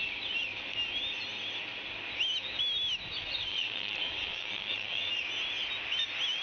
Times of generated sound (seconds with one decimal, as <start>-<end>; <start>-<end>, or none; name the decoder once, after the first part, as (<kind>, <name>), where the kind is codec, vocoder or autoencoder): 3.5-5.1 (vocoder, WaveNeXt)